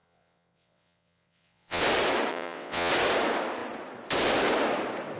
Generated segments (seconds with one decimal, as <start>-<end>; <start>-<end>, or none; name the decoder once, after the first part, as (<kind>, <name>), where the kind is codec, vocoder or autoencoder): 0.0-1.8 (vocoder, WaveNeXt); 2.3-2.9